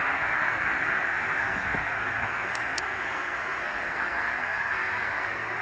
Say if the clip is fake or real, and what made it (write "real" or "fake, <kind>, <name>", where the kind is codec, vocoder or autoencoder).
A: fake, codec, SNAC